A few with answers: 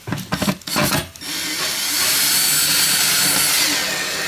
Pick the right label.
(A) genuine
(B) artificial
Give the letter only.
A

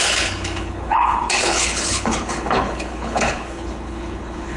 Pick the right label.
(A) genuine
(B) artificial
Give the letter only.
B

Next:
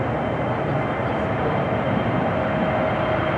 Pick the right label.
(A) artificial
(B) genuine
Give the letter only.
B